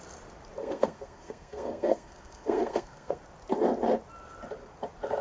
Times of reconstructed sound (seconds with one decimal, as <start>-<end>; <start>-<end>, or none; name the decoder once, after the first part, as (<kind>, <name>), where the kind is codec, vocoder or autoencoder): 0.6-3.2 (codec, SNAC)

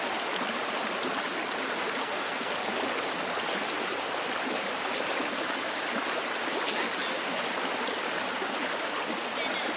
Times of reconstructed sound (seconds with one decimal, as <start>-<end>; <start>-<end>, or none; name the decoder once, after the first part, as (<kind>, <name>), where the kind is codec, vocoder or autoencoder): 2.0-2.5 (codec, SNAC)

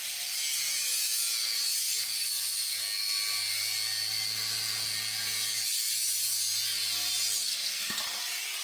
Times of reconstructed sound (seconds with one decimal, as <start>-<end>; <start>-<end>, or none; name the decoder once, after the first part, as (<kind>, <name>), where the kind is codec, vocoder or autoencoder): 7.4-8.2 (codec, SNAC)

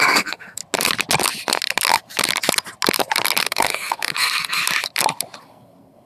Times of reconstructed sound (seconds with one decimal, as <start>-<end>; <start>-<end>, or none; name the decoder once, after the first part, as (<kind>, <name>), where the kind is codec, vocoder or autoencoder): 0.0-0.6 (codec, SNAC); 3.4-4.6; 5.4-6.1

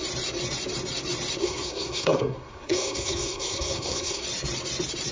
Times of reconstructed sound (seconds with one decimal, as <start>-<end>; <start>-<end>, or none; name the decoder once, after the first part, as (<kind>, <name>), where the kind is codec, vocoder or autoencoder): 1.4-4.2 (codec, SNAC)

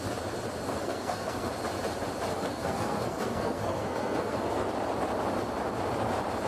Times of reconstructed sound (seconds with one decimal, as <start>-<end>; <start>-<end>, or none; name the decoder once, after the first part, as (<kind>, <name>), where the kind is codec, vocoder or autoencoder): 0.7-1.5 (codec, SNAC); 2.3-4.7

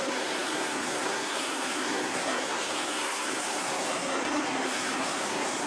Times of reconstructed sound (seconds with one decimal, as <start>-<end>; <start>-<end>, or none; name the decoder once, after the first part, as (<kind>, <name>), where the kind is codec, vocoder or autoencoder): 0.0-5.7 (codec, SNAC)

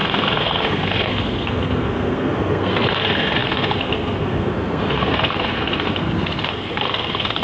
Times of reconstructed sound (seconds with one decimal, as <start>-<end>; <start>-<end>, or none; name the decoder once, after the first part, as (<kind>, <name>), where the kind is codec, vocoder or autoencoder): 0.0-7.4 (codec, SNAC)